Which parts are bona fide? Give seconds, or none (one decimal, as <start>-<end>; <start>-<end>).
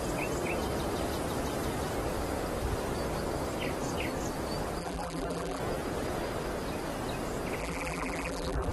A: 0.0-4.8; 5.6-7.6